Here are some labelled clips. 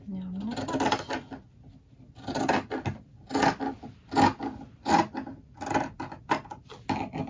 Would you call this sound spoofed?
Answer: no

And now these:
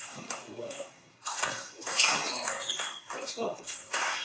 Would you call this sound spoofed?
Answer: yes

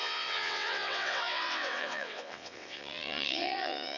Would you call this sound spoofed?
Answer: yes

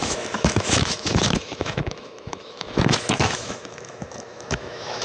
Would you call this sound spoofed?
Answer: yes